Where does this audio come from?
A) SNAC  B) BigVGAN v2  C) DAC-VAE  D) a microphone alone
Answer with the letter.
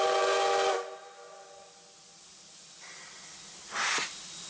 D